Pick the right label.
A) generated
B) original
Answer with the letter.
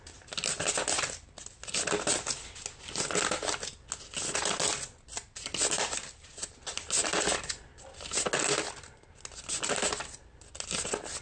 B